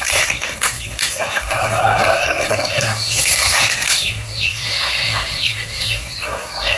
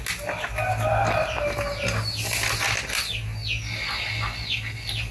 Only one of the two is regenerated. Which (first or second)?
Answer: first